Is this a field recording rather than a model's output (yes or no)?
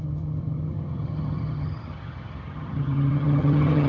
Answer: no